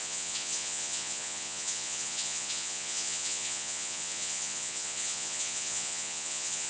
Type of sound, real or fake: fake